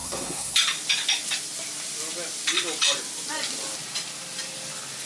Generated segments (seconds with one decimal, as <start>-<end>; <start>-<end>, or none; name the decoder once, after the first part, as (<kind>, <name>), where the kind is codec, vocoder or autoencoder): 0.0-0.5 (codec, SNAC)